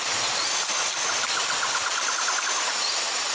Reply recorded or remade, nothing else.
recorded